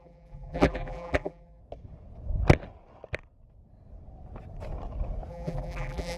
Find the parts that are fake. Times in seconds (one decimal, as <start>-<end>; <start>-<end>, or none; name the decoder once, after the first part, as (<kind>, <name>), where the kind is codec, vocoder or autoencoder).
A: 0.0-1.6 (vocoder, BigVGAN v2); 5.3-6.2